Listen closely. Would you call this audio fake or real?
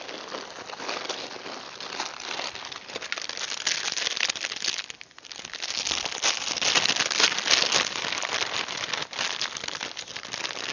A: real